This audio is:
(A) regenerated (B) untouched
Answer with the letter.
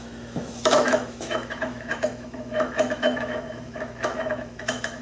A